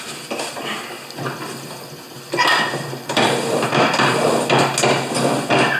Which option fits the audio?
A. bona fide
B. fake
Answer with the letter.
A